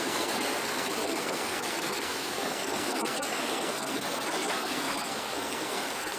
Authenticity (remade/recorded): remade